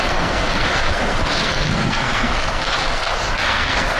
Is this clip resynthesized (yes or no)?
yes